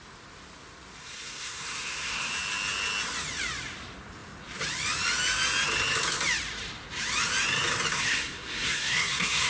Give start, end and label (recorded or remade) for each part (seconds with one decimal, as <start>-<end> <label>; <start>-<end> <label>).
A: 0.0-1.0 recorded; 1.0-2.3 remade; 2.3-7.9 recorded; 7.9-9.5 remade